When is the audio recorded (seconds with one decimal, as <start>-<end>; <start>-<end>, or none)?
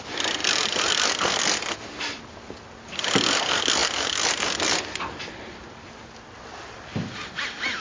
0.0-7.8